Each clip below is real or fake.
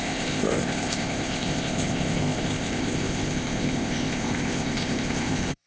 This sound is fake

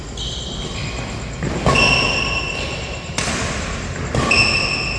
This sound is real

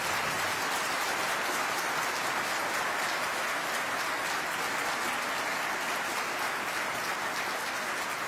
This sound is real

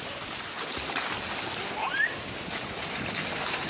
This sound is real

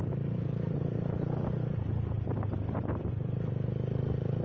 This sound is real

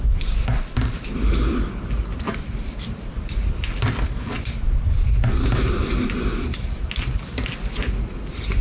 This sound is real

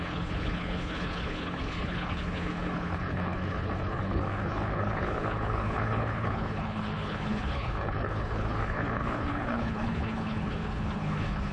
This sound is fake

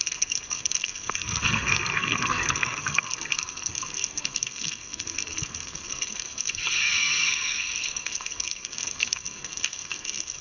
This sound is fake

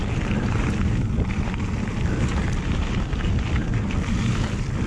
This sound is fake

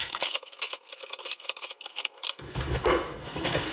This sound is fake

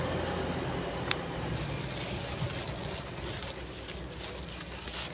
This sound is real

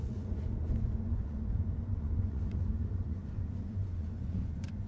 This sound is fake